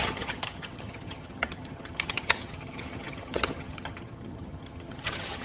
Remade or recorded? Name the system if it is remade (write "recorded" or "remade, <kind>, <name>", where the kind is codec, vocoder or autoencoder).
remade, vocoder, HiFi-GAN